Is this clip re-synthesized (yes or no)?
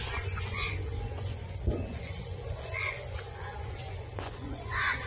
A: yes